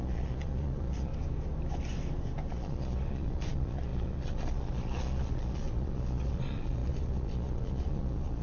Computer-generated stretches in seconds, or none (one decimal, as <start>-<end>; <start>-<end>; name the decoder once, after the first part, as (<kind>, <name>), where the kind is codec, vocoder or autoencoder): 0.0-1.1 (vocoder, Vocos); 2.5-8.4